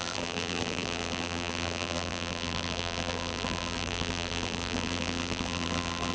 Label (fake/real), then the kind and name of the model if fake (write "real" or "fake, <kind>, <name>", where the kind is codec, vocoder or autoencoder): fake, vocoder, BigVGAN v2